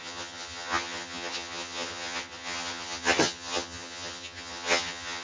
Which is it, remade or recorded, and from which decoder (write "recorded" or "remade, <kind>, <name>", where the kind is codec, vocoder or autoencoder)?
remade, vocoder, HiFi-GAN